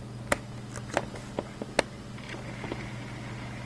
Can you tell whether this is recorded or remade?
recorded